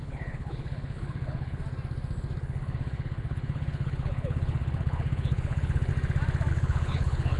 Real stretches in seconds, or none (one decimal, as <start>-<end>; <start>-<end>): 1.6-2.4; 5.9-6.5